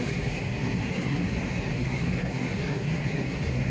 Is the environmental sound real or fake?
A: fake